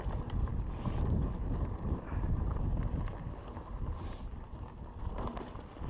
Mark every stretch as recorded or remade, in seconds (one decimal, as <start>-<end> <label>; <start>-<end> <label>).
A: 0.0-5.9 recorded